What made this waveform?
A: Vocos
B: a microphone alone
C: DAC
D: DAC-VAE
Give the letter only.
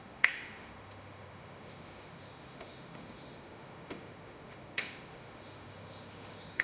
D